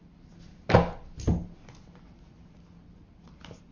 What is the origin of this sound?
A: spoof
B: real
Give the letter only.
B